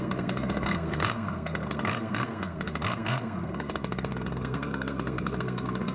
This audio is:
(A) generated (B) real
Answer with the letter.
A